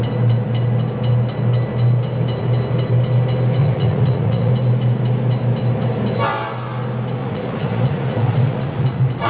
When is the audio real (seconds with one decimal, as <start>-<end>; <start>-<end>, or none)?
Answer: 0.0-3.6; 4.5-7.2